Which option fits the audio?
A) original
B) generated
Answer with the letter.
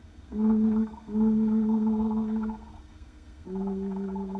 B